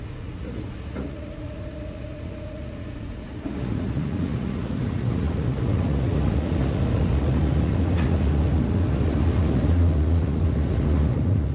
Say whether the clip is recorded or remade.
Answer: remade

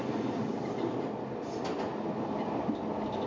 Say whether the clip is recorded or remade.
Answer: recorded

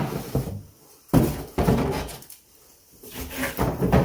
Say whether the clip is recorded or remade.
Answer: recorded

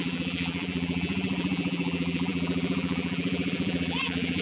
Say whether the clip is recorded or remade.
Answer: remade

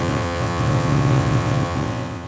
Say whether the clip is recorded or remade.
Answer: remade